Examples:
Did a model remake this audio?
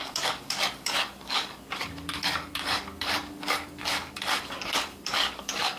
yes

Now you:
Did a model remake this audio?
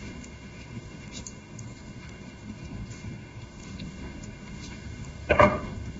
yes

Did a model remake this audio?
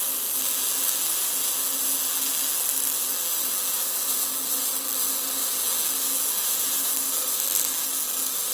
no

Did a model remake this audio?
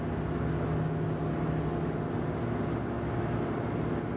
no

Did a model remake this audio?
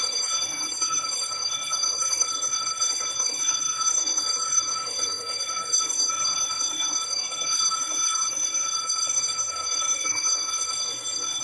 yes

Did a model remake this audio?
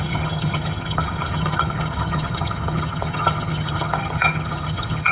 yes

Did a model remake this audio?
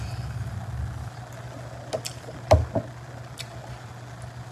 no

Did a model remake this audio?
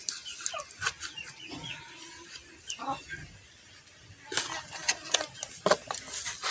no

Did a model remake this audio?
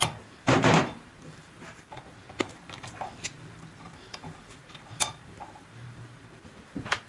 yes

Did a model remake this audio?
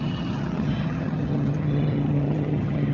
yes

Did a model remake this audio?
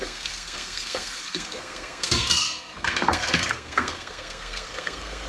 yes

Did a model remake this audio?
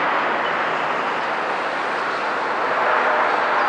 no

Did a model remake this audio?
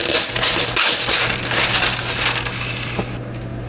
no